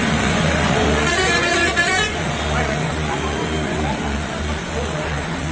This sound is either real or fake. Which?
fake